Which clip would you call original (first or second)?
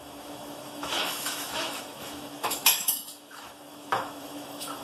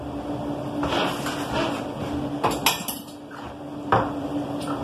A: second